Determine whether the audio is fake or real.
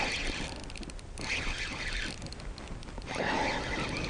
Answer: real